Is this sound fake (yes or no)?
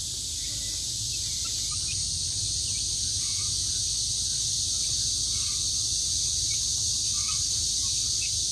no